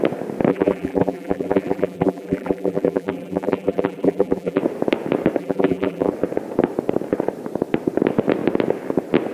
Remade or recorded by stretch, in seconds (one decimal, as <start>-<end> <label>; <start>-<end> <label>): 0.0-0.5 recorded; 0.5-4.6 remade; 4.6-5.4 recorded; 5.4-6.1 remade; 6.1-9.3 recorded